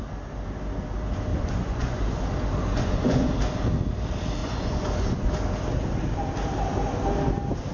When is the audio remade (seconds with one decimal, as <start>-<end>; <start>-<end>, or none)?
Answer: 1.3-2.2; 2.7-3.3; 4.4-5.3